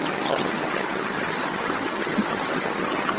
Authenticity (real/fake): fake